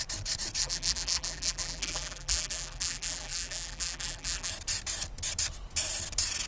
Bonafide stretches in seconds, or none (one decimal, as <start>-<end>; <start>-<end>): 0.0-0.6; 4.5-6.5